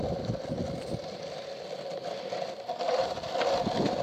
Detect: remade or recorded recorded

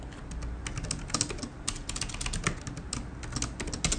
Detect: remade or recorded recorded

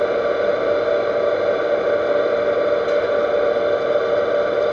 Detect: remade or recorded recorded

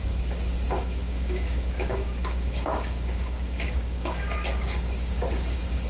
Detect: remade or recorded remade